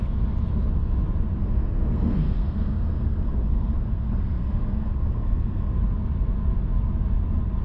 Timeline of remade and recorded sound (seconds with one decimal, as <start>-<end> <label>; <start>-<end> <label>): 0.0-1.4 recorded; 1.4-5.7 remade; 5.7-7.6 recorded